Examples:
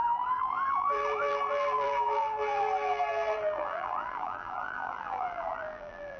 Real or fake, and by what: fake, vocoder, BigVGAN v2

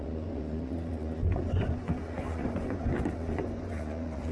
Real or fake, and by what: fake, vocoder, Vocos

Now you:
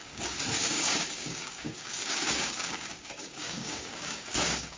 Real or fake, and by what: fake, codec, DAC